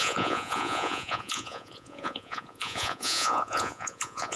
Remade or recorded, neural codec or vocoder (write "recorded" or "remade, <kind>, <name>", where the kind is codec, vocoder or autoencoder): remade, vocoder, Vocos